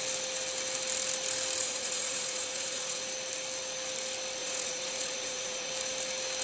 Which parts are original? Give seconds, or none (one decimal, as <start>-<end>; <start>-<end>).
0.0-1.6; 3.0-4.4; 5.7-6.4